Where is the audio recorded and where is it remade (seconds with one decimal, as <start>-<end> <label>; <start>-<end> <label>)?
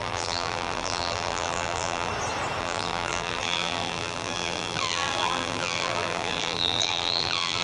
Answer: 0.0-2.1 remade; 2.1-2.6 recorded; 2.6-7.6 remade